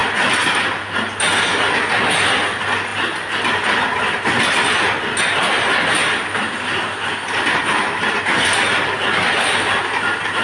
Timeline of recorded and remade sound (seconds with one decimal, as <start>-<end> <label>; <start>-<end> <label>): 0.0-10.4 recorded